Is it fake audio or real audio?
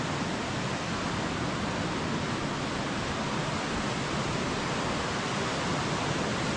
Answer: real